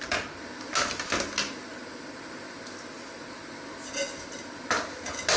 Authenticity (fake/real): real